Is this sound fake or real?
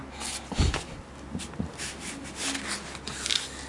real